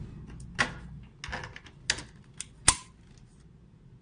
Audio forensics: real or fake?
real